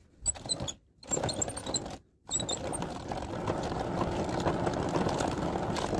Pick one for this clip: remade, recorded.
recorded